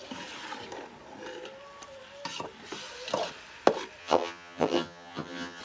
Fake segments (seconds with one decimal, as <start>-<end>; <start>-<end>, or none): 4.0-5.6